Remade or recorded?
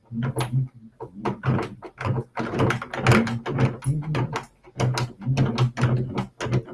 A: recorded